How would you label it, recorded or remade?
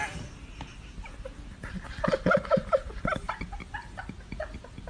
recorded